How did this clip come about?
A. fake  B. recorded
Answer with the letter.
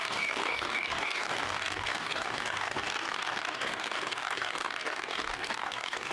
A